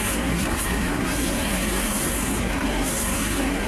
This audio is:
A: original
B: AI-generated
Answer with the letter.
B